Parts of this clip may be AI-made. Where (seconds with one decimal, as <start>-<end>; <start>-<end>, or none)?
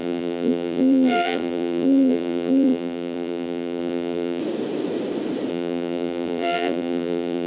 0.0-4.4; 5.5-7.5